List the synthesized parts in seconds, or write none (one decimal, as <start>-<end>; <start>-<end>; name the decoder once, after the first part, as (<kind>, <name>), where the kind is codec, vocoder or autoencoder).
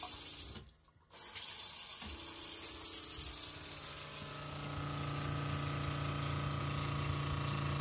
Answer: none